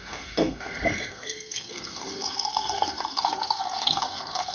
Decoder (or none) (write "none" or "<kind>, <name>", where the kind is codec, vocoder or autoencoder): codec, SNAC